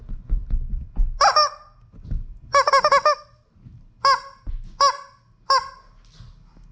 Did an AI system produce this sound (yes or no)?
no